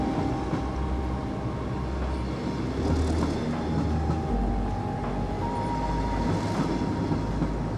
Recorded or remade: recorded